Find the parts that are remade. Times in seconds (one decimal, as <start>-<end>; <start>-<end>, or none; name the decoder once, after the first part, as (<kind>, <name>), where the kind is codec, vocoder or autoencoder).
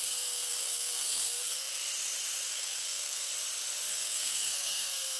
0.0-1.8 (codec, SNAC); 2.5-3.3; 3.9-5.2